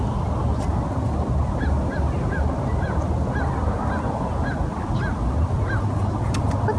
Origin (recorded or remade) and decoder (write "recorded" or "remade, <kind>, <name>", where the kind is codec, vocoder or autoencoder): recorded